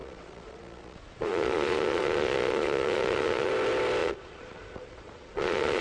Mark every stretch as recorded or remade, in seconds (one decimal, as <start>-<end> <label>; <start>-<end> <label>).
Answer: 0.0-3.5 remade; 3.5-4.0 recorded; 4.0-5.8 remade